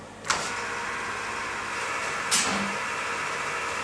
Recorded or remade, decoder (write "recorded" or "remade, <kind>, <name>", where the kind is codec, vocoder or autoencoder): recorded